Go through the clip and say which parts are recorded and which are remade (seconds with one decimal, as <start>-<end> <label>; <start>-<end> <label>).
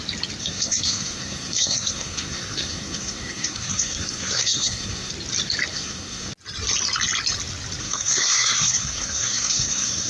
0.0-0.4 recorded; 0.4-5.1 remade; 5.1-5.7 recorded; 5.7-6.3 remade; 6.3-7.8 recorded; 7.8-10.1 remade